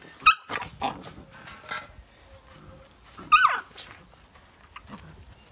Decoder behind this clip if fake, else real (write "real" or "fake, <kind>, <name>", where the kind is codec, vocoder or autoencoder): real